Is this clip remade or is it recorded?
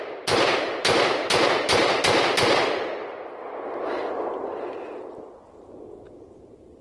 recorded